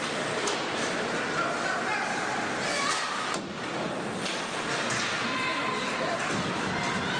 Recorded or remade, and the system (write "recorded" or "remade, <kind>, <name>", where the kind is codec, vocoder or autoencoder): recorded